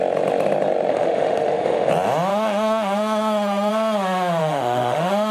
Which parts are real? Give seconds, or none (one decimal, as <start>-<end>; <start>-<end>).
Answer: 0.0-0.9; 1.9-2.3; 3.7-4.4